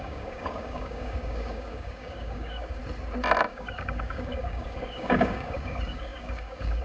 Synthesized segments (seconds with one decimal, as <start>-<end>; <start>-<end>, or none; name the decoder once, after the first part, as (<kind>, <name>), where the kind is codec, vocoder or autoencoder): 0.0-2.8 (codec, DAC); 3.4-6.8